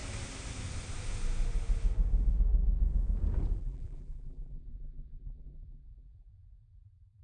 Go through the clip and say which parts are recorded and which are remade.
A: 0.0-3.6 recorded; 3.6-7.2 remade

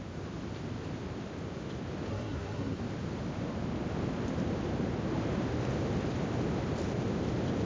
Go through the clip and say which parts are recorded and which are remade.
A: 0.0-2.1 recorded; 2.1-2.8 remade; 2.8-7.7 recorded